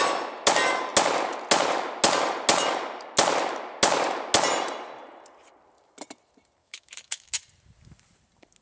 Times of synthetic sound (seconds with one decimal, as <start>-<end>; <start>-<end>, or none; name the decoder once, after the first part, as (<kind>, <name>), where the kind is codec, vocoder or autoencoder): 6.6-7.4 (autoencoder, DAC-VAE)